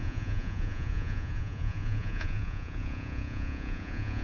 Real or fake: fake